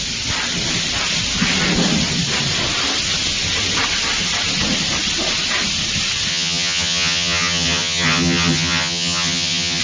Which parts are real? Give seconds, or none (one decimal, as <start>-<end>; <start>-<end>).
0.0-6.3